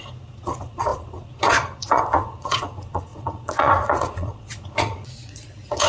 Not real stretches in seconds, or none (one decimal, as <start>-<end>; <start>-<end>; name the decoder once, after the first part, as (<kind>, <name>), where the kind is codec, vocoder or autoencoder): 0.0-5.9 (vocoder, Vocos)